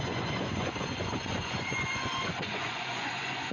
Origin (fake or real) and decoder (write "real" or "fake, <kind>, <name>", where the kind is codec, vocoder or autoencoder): fake, vocoder, Vocos